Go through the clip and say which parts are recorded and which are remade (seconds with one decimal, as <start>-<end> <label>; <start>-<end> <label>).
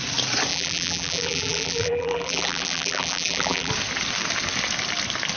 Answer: 0.0-0.5 recorded; 0.5-3.7 remade; 3.7-5.4 recorded